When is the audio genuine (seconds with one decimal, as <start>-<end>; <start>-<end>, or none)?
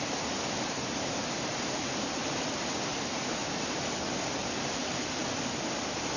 0.0-6.2